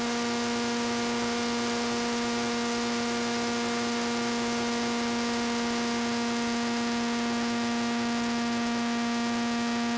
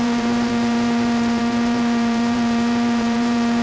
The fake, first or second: second